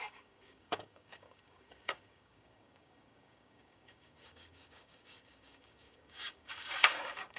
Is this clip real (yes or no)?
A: no